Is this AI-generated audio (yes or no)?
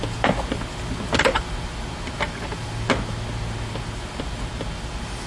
no